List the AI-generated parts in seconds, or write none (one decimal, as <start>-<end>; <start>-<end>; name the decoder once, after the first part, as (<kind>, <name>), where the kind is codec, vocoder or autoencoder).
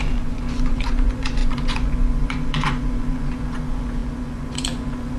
0.0-5.2 (vocoder, Vocos)